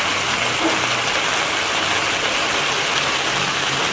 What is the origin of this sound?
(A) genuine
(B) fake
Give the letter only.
A